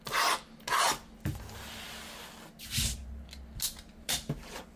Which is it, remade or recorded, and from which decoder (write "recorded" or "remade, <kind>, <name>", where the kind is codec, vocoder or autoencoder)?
recorded